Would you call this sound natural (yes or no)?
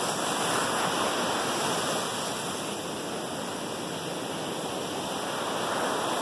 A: yes